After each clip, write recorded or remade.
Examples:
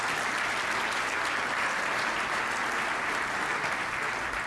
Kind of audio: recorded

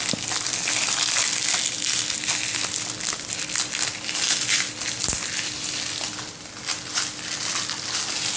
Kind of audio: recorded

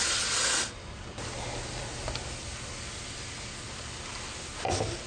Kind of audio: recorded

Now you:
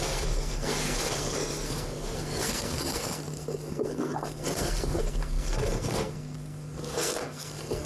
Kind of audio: remade